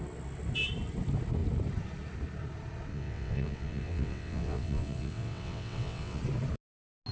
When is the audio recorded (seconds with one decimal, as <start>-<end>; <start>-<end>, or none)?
0.0-2.9; 6.2-7.1